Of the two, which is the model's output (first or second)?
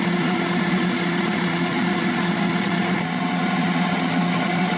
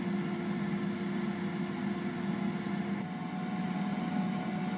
first